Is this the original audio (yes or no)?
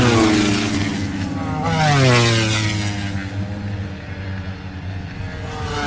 yes